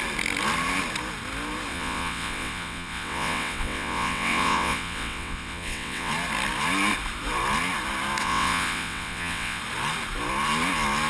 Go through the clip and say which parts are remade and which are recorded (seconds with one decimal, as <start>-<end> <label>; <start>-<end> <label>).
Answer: 0.0-1.7 recorded; 1.7-6.1 remade; 6.1-8.2 recorded; 8.2-9.6 remade; 9.6-11.1 recorded